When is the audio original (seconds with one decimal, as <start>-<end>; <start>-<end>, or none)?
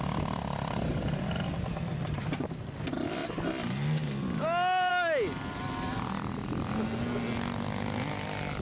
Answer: 0.0-8.6